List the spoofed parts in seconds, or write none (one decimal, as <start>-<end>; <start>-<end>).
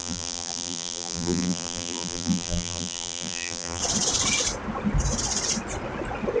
0.0-3.8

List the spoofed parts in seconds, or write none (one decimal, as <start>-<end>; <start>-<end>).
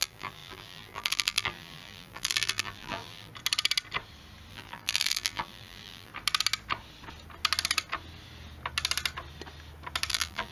0.0-3.3; 4.5-6.1; 10.1-10.5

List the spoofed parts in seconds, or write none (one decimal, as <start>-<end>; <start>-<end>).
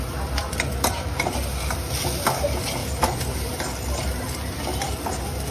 2.8-3.6